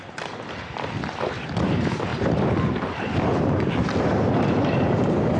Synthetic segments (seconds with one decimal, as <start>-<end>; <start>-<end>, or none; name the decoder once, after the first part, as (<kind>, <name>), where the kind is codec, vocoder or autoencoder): none